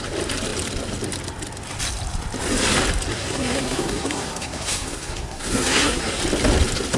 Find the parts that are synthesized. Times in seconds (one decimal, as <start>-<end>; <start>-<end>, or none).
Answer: 3.1-6.2